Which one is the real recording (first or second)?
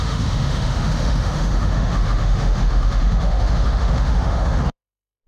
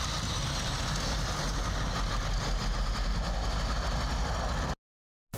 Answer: second